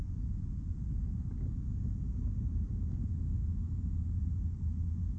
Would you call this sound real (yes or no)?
yes